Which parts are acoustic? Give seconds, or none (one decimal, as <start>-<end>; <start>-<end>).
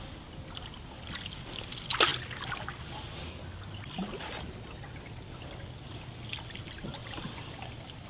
0.0-7.0